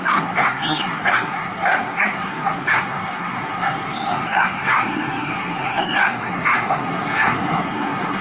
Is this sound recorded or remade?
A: remade